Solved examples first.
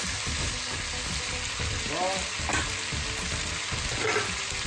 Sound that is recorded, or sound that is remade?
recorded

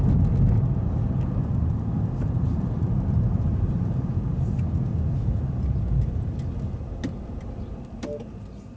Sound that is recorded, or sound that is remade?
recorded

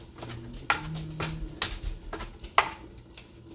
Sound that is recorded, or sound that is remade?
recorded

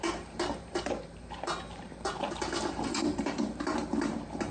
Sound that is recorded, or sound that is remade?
remade